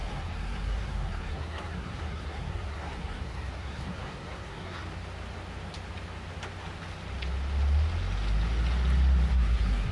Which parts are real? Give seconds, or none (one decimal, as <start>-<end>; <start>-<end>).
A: 4.8-9.3